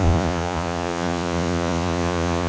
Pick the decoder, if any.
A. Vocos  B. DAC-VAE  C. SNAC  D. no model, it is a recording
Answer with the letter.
A